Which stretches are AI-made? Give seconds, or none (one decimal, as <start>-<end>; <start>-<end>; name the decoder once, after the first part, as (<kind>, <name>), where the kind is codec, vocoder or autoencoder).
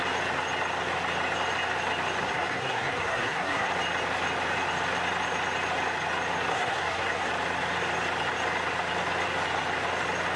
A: 2.2-3.7 (codec, SNAC); 6.5-7.3